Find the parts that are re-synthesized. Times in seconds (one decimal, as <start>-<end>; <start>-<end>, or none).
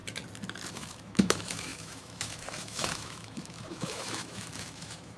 0.7-5.2